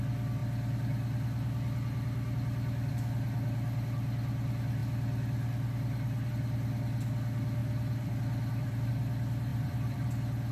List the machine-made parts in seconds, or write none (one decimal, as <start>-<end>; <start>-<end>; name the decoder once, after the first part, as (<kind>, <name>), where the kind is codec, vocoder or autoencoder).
7.6-8.9 (vocoder, BigVGAN v2); 9.5-10.1